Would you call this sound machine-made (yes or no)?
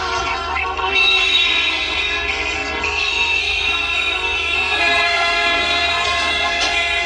yes